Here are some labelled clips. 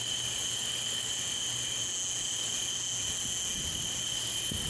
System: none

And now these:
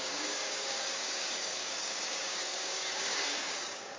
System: codec, DAC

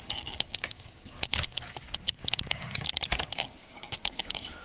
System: codec, DAC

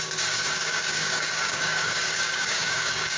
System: codec, DAC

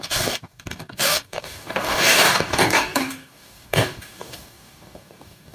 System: codec, DAC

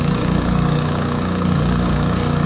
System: codec, DAC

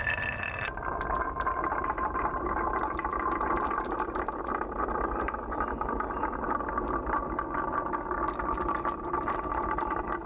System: none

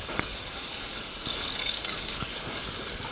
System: codec, DAC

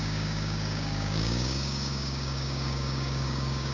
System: codec, DAC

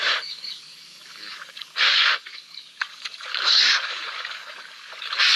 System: codec, DAC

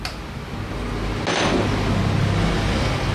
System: none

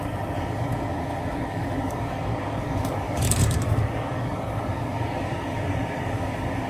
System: codec, DAC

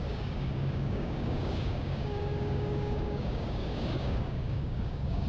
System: codec, DAC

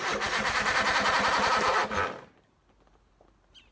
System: none